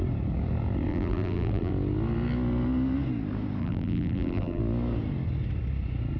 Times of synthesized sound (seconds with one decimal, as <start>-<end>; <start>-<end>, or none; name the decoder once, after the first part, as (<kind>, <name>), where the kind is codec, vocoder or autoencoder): 0.9-1.7 (vocoder, BigVGAN v2); 3.6-4.6